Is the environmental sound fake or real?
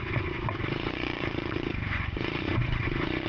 fake